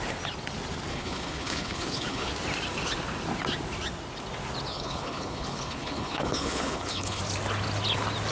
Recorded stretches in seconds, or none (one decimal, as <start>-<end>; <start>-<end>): 0.0-0.9; 2.3-4.7; 7.2-8.3